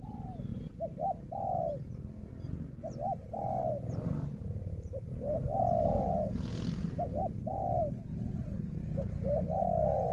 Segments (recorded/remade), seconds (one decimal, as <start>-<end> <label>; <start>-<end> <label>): 0.0-10.1 recorded